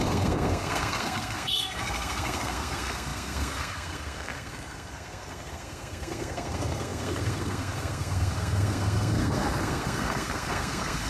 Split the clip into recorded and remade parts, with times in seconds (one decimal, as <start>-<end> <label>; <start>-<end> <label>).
0.0-11.1 remade